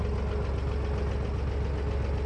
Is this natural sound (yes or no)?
yes